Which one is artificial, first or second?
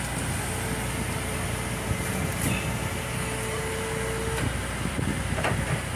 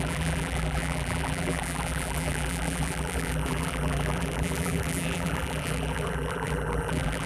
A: second